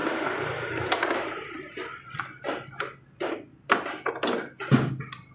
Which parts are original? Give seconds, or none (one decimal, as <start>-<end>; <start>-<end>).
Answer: 2.0-3.5; 4.1-5.3